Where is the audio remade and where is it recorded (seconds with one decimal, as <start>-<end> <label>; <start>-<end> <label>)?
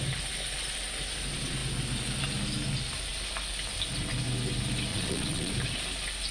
0.0-4.9 recorded; 4.9-5.5 remade; 5.5-6.3 recorded